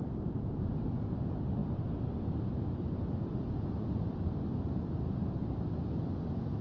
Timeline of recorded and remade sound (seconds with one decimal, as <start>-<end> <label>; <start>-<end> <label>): 0.0-6.6 recorded